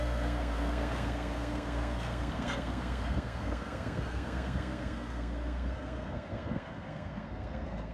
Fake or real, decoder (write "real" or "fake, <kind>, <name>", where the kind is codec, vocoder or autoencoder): fake, codec, SNAC